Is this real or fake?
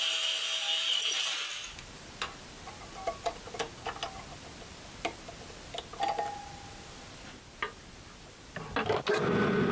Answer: real